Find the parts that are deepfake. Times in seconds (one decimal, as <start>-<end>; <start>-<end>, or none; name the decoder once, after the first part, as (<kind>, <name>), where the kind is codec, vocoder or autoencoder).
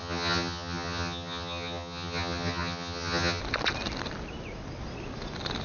0.0-3.4 (vocoder, HiFi-GAN)